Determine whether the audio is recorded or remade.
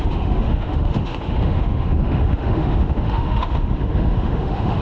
remade